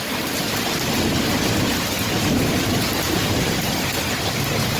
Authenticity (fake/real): real